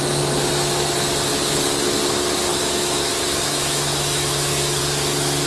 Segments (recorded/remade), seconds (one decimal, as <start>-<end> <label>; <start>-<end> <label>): 0.0-2.5 recorded; 2.5-4.8 remade; 4.8-5.5 recorded